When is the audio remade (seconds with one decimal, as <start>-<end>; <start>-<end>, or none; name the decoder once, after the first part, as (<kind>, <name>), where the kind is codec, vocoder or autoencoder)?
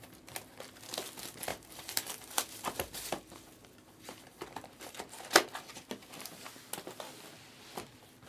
1.5-5.0 (vocoder, BigVGAN v2)